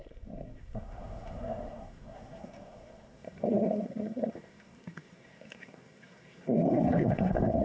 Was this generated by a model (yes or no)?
yes